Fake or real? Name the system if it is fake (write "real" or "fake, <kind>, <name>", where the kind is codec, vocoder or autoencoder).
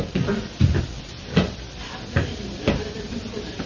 real